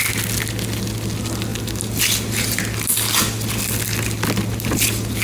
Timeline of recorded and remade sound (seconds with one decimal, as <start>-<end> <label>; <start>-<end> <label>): 0.0-5.2 recorded